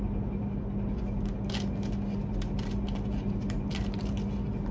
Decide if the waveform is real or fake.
real